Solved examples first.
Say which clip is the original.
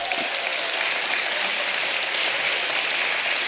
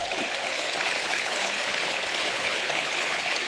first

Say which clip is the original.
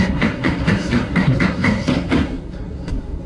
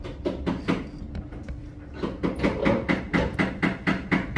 second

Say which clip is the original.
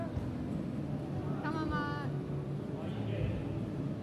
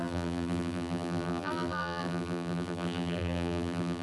first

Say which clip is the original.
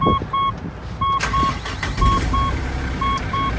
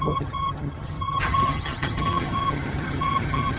first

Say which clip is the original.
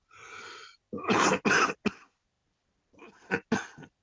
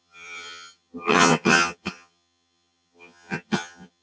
first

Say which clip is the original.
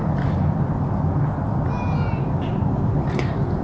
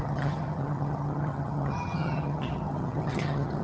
first